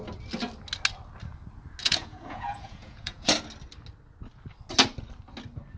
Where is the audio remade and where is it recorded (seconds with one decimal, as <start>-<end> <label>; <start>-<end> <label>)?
0.0-1.8 recorded; 1.8-3.3 remade; 3.3-5.8 recorded